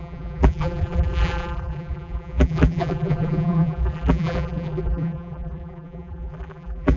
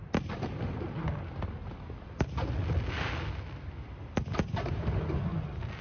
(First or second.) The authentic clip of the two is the second